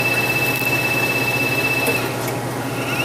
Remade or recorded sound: recorded